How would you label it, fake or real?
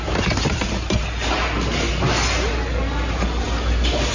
real